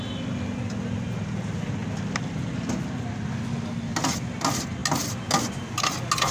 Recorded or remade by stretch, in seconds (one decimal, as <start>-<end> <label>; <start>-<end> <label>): 0.0-6.3 recorded